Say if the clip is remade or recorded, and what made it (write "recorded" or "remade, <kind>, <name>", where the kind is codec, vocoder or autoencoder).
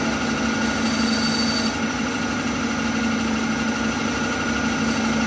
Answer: recorded